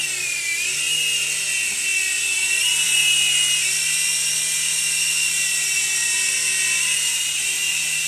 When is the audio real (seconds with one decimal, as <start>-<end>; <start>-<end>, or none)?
1.9-2.7; 4.1-5.6